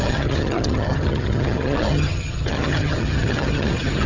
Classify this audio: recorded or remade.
remade